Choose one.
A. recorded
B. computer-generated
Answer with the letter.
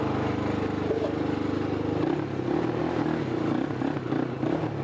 A